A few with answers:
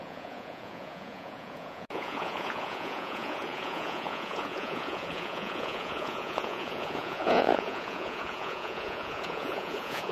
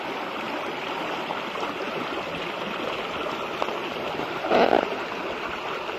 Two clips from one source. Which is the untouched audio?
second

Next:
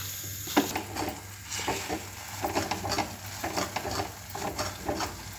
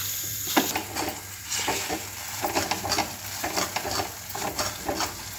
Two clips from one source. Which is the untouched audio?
first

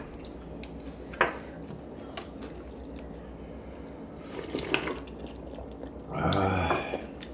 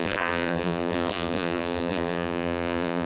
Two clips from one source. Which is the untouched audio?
first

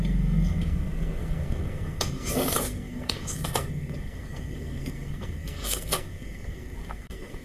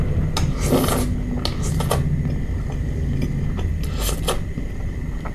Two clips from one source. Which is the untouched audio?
second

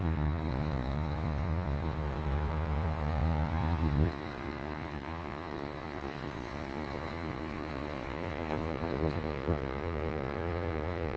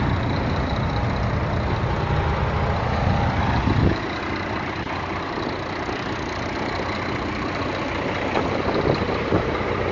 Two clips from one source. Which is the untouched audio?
second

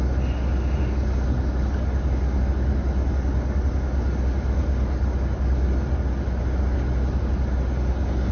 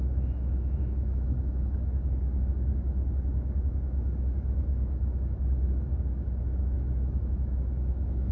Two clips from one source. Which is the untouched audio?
first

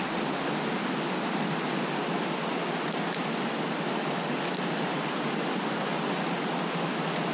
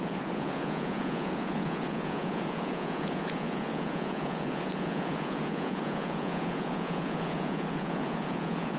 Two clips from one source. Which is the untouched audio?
first